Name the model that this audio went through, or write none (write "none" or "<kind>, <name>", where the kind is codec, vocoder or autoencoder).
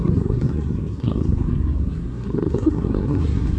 codec, SNAC